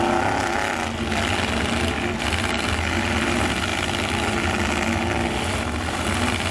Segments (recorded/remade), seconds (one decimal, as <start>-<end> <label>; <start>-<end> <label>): 0.0-6.5 recorded